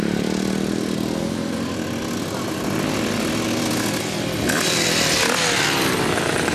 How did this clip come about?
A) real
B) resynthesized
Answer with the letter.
A